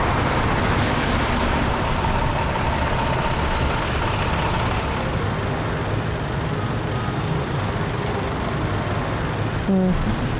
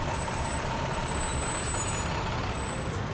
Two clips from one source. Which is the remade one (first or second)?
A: second